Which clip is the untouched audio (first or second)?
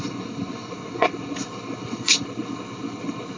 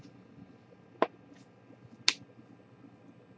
second